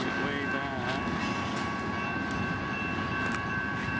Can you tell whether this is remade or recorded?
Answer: recorded